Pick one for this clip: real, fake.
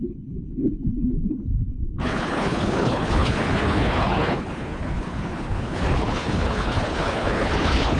fake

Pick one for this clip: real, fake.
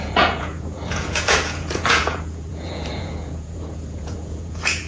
fake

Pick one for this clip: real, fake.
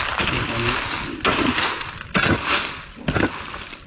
real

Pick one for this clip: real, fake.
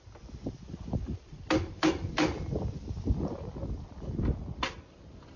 fake